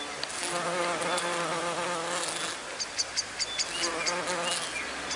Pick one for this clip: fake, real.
real